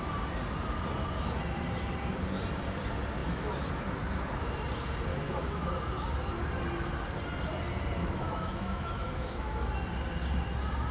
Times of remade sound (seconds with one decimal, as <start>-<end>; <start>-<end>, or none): 3.2-3.7; 5.1-5.7; 8.0-9.7